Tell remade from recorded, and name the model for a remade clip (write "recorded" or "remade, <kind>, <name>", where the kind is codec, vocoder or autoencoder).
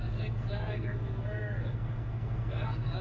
remade, codec, SNAC